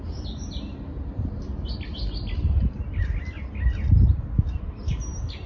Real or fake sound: real